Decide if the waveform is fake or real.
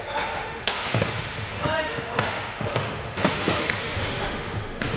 fake